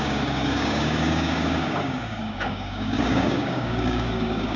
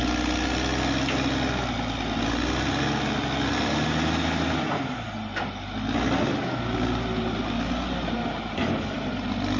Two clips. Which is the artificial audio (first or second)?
first